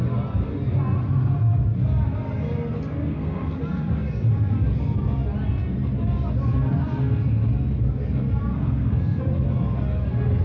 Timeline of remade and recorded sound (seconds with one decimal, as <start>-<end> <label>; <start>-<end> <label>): 0.0-2.9 recorded; 2.9-3.6 remade; 3.6-8.5 recorded; 8.5-9.2 remade; 9.2-10.4 recorded

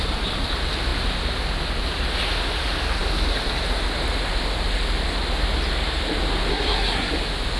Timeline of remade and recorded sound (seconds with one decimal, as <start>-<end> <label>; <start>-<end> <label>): 0.0-6.5 recorded; 6.5-7.1 remade; 7.1-7.6 recorded